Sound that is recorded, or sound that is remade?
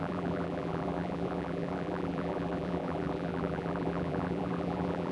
remade